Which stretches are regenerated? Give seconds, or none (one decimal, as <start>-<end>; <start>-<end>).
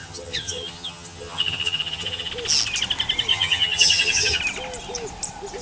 0.0-2.3; 3.3-4.4